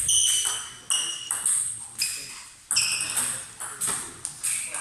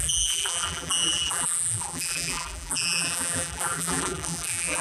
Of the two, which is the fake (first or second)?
second